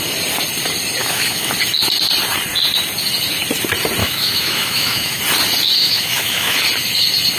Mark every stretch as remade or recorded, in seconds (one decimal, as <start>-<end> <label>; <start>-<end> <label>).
0.0-1.0 recorded; 1.0-1.5 remade; 1.5-4.0 recorded; 4.0-5.2 remade; 5.2-5.8 recorded; 5.8-6.6 remade; 6.6-7.4 recorded